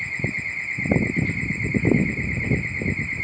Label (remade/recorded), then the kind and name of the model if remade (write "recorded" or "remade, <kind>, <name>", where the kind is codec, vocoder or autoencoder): recorded